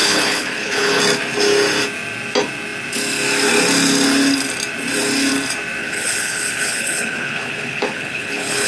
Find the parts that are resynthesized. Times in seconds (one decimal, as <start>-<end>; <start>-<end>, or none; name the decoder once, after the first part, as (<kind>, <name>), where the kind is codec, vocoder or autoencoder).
0.0-1.0 (codec, HILCodec); 5.8-8.7